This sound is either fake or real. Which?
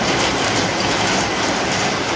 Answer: real